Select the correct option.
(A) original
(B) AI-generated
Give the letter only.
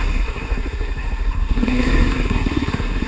B